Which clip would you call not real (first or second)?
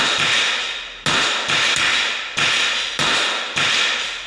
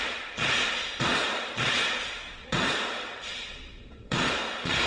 second